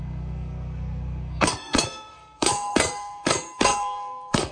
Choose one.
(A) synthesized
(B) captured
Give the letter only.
A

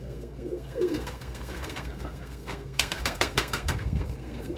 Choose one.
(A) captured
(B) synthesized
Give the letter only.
B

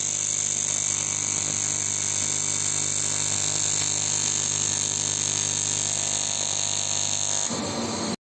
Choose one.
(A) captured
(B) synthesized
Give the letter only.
A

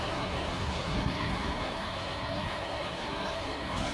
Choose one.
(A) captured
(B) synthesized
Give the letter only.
B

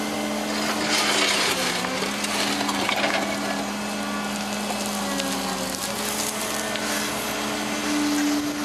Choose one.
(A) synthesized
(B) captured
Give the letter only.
B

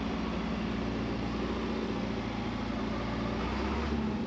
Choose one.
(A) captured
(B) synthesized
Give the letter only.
A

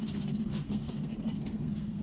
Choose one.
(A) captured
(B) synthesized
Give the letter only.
B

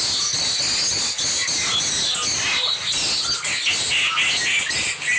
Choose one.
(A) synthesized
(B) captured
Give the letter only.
B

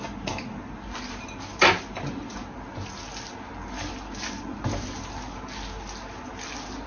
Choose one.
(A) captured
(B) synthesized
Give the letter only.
A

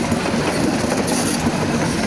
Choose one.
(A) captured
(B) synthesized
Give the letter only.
A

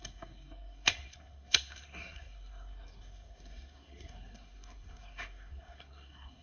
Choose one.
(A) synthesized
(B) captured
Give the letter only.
A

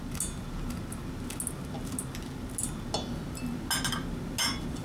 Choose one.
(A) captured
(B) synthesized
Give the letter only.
A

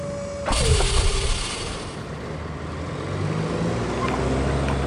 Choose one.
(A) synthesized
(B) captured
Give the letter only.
B